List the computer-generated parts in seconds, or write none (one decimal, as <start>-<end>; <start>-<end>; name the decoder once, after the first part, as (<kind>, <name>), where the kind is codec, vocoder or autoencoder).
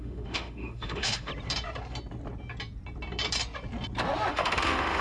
0.0-1.3 (autoencoder, DAC-VAE); 4.3-5.0